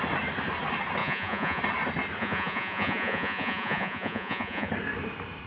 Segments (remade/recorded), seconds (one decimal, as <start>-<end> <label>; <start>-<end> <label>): 0.0-1.0 recorded; 1.0-1.6 remade; 1.6-2.2 recorded; 2.2-4.7 remade; 4.7-5.5 recorded